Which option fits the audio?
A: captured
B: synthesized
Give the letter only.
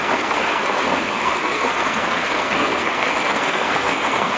B